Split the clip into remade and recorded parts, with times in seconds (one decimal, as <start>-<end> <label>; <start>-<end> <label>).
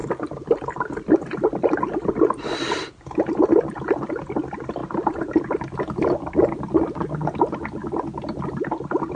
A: 0.0-9.2 recorded